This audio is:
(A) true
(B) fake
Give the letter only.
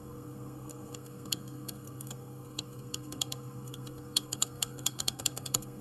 B